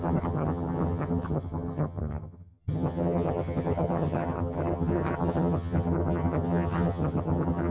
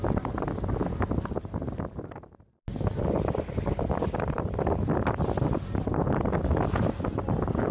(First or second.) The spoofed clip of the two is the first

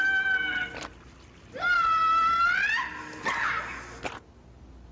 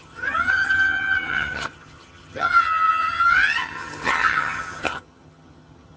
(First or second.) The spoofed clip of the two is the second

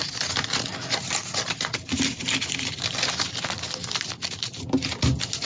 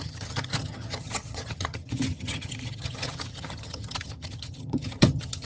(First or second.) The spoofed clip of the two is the second